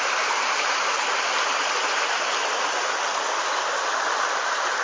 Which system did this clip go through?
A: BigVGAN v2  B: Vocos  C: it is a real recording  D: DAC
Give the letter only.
A